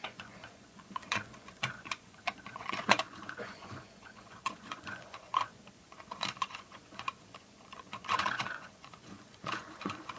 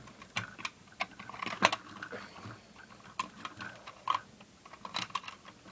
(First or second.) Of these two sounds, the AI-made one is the first